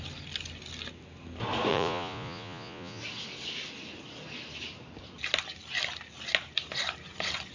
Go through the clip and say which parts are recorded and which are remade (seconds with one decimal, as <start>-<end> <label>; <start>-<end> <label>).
0.0-1.7 recorded; 1.7-3.0 remade; 3.0-7.5 recorded